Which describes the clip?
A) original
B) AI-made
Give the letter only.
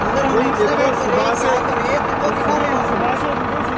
A